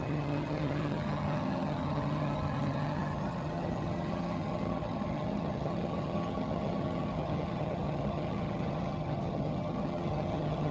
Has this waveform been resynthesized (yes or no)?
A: yes